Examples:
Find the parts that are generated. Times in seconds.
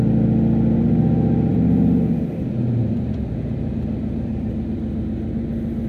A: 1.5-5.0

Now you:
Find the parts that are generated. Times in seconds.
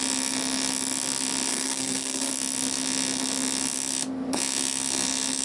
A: 1.5-2.3